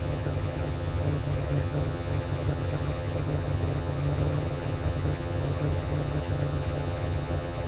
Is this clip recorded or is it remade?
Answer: remade